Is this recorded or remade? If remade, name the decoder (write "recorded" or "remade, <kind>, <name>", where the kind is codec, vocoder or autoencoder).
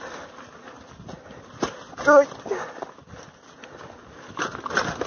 recorded